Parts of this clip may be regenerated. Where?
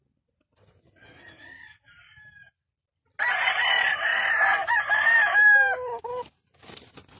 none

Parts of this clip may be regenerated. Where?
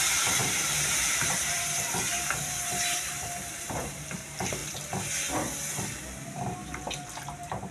0.0-4.6 (vocoder, BigVGAN v2); 6.3-7.7